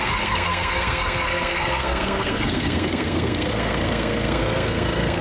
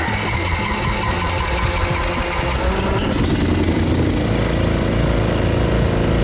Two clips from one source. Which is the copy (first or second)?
first